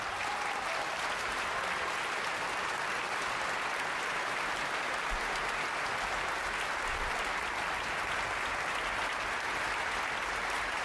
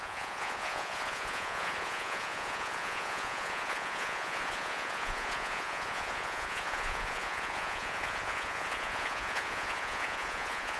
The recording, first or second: first